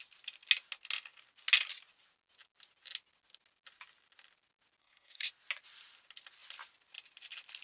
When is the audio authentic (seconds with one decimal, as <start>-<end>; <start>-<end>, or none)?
0.0-4.8; 5.3-7.6